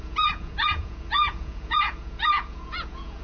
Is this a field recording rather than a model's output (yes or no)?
no